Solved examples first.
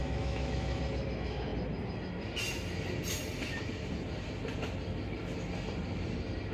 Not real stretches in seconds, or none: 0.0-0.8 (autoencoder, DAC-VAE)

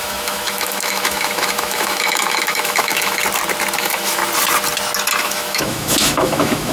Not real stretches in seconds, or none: 0.0-3.2 (autoencoder, DAC-VAE); 3.8-4.2; 5.2-6.7

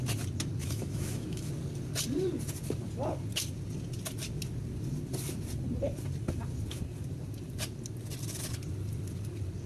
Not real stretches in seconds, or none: 0.6-1.5 (autoencoder, DAC-VAE)

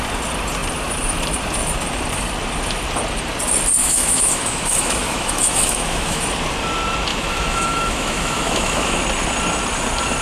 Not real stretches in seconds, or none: 3.8-6.2 (autoencoder, DAC-VAE); 7.1-9.0

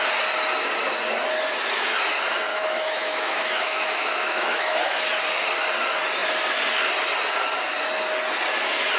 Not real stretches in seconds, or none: 2.5-5.0 (autoencoder, DAC-VAE)

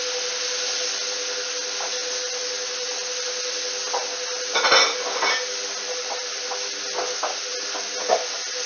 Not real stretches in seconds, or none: none

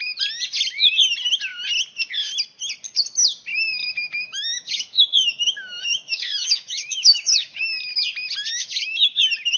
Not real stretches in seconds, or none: 3.5-7.8 (autoencoder, DAC-VAE); 8.5-9.1

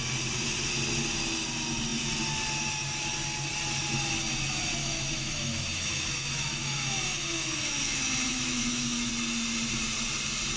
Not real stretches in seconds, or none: 4.8-9.1 (autoencoder, DAC-VAE)